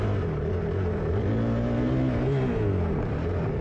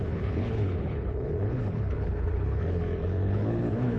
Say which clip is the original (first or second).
first